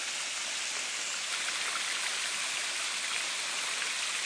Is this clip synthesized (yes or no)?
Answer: no